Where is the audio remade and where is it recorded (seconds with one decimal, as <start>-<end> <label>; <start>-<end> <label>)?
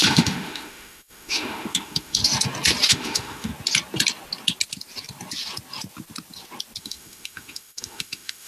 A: 0.0-2.2 remade; 2.2-2.9 recorded; 2.9-3.5 remade; 3.5-6.8 recorded; 6.8-8.5 remade